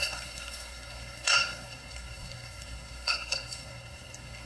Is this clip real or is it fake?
fake